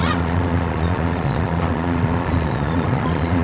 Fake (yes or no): yes